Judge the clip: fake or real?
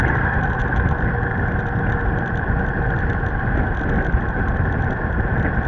real